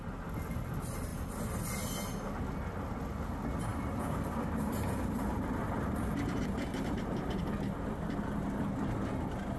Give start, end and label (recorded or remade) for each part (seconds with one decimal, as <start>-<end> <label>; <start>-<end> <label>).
0.0-3.7 recorded; 3.7-8.6 remade; 8.6-9.6 recorded